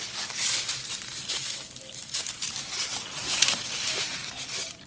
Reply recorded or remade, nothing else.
remade